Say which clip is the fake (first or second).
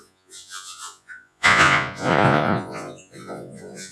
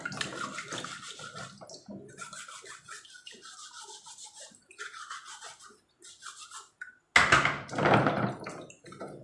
first